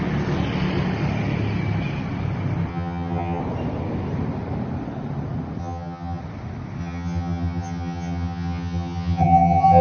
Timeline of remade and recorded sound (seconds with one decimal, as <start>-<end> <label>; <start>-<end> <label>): 0.0-2.7 recorded; 2.7-3.4 remade; 3.4-5.6 recorded; 5.6-6.2 remade; 6.2-6.8 recorded; 6.8-9.8 remade